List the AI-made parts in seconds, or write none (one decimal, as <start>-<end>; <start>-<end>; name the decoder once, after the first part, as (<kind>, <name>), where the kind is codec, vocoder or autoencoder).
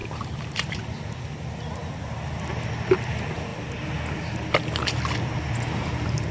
0.0-0.8 (vocoder, BigVGAN v2)